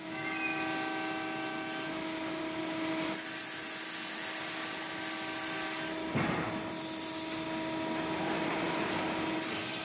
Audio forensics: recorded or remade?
recorded